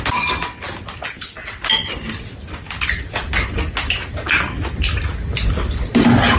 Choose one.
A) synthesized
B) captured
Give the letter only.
B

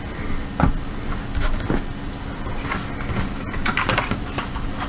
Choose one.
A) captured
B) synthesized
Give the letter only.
B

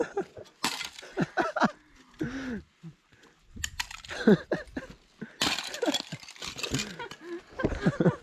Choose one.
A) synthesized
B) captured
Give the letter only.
B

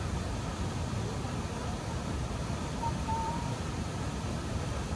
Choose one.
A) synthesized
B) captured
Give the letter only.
A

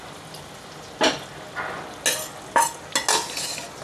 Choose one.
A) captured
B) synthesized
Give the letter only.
A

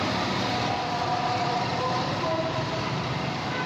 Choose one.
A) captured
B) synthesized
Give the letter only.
B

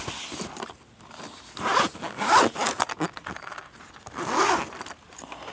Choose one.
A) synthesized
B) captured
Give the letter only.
B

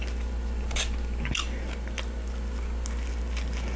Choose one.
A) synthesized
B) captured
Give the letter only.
B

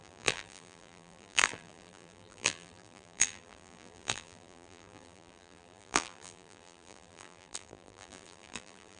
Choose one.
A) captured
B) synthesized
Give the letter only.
B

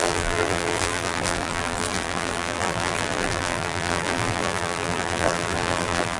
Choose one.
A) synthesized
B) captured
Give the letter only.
A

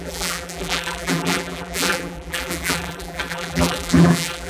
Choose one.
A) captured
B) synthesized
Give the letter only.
B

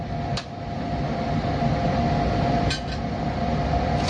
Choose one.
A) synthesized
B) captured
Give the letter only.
B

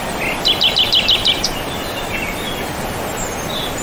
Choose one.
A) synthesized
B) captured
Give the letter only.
B